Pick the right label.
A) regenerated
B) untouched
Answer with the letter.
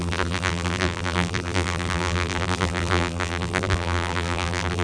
A